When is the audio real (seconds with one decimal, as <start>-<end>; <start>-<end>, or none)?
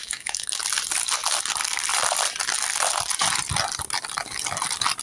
0.6-5.0